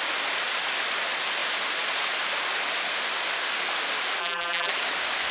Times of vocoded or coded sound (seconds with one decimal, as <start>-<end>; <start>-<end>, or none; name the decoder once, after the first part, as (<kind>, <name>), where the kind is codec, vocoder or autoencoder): 4.2-4.7 (vocoder, BigVGAN v2)